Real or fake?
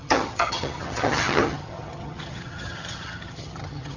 fake